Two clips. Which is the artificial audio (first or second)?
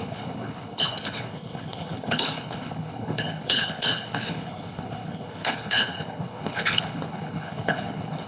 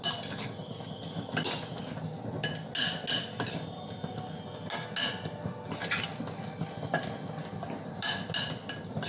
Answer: first